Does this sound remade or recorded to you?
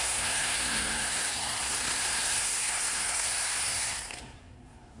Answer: remade